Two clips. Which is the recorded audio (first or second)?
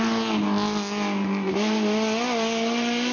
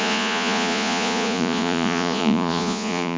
first